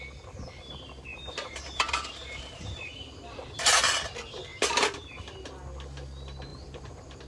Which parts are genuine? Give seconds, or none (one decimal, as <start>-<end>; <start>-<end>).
0.0-1.1; 3.8-4.5; 5.1-6.5